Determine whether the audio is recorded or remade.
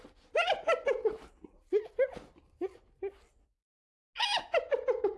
recorded